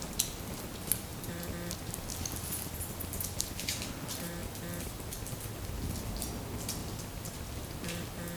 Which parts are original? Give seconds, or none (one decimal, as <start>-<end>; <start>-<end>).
0.0-8.4